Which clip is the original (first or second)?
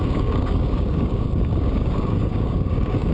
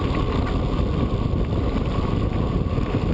second